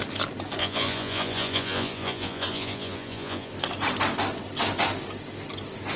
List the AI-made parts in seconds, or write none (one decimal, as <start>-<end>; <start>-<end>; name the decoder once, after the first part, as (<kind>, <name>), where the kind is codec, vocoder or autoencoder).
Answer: 0.6-3.5 (vocoder, Vocos)